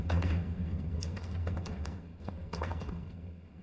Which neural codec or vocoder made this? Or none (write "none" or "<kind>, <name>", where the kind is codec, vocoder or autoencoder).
codec, SNAC